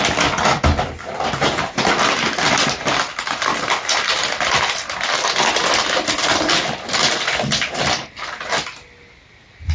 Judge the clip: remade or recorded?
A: recorded